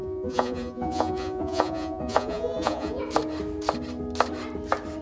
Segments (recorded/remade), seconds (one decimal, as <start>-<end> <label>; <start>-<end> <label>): 0.0-3.0 remade; 3.0-5.0 recorded